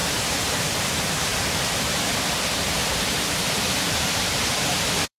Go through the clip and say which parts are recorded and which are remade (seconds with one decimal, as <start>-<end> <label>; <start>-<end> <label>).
0.0-2.8 recorded; 2.8-5.2 remade